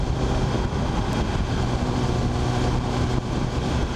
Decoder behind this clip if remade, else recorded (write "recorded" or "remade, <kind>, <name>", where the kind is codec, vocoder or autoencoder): recorded